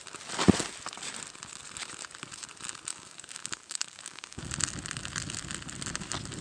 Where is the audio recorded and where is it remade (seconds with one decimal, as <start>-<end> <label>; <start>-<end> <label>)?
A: 0.0-2.9 recorded; 2.9-4.4 remade; 4.4-6.4 recorded